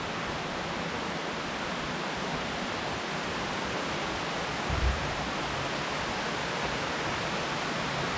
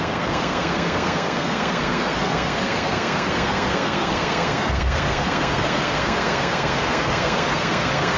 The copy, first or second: second